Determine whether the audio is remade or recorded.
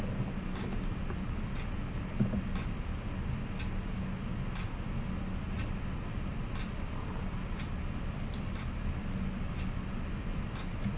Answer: recorded